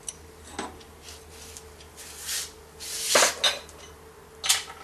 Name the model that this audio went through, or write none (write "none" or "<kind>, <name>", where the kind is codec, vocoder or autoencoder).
none